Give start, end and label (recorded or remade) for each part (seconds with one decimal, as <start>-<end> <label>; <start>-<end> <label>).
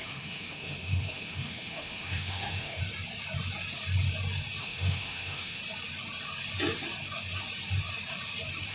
0.0-2.8 remade; 2.8-4.6 recorded; 4.6-5.6 remade; 5.6-8.7 recorded